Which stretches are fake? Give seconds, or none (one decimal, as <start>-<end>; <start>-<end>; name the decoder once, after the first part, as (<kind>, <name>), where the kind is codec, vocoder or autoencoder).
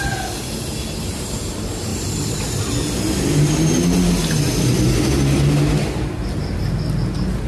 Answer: 1.9-2.6 (vocoder, BigVGAN v2)